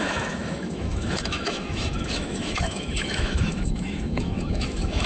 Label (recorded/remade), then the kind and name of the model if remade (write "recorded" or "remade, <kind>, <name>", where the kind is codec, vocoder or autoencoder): remade, autoencoder, DAC-VAE